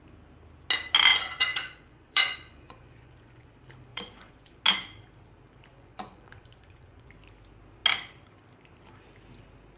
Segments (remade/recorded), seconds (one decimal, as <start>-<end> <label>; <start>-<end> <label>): 0.0-1.1 recorded; 1.1-3.5 remade; 3.5-3.9 recorded; 3.9-4.6 remade; 4.6-5.7 recorded; 5.7-7.1 remade; 7.1-9.8 recorded